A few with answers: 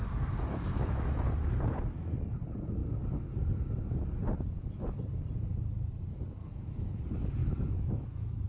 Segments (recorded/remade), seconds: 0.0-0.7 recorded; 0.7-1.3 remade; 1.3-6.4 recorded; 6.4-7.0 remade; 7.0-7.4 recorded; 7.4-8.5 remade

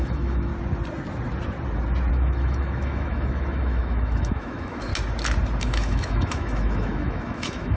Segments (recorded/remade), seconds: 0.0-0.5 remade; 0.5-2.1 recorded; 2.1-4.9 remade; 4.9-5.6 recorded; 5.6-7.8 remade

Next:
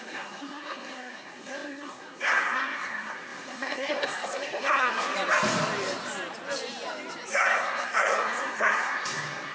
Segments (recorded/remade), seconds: 0.0-5.1 remade; 5.1-7.3 recorded; 7.3-9.5 remade

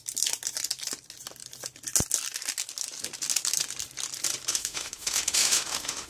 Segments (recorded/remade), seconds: 0.0-4.5 recorded; 4.5-6.1 remade

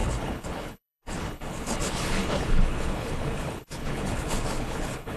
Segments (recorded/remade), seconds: 0.0-5.2 remade

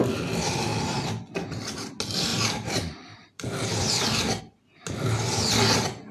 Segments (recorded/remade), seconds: 0.0-0.7 recorded; 0.7-1.9 remade; 1.9-2.3 recorded; 2.3-4.4 remade; 4.4-6.1 recorded

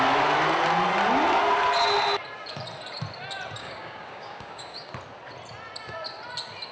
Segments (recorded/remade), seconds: 0.0-3.6 recorded; 3.6-4.9 remade; 4.9-6.7 recorded